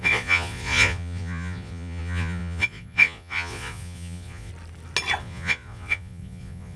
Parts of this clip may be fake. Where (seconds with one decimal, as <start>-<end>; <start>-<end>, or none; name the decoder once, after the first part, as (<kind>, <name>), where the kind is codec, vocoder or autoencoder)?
0.0-4.5 (vocoder, Vocos); 5.2-6.8